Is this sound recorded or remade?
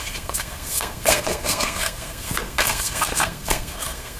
remade